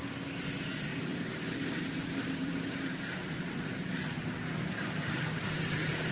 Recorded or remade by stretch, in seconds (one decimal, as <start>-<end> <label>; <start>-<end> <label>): 0.0-0.9 recorded; 0.9-3.1 remade; 3.1-6.1 recorded